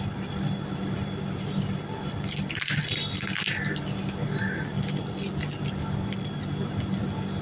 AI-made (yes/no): no